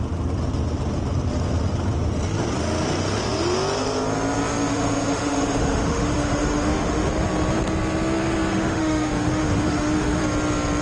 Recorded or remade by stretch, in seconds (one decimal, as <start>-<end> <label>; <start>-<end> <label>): 0.0-4.7 recorded; 4.7-7.1 remade; 7.1-8.5 recorded; 8.5-10.2 remade; 10.2-10.8 recorded